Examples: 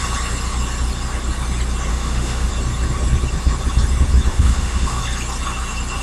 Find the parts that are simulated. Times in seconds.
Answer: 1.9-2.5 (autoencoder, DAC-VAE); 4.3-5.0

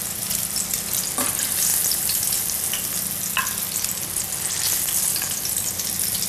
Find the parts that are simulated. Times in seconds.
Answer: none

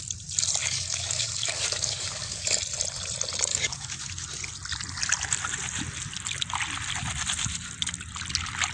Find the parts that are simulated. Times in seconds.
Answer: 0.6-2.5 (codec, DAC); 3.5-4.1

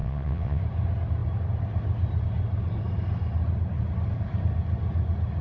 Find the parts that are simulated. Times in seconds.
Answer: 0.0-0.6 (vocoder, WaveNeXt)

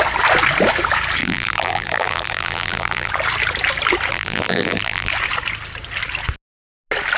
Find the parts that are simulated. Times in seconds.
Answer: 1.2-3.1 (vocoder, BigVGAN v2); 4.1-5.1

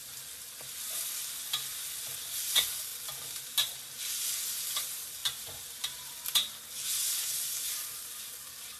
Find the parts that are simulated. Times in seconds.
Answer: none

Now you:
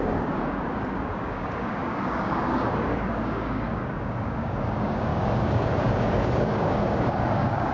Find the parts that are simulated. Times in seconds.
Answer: 0.0-7.7 (codec, DAC)